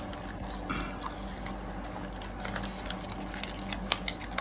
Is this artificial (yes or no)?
no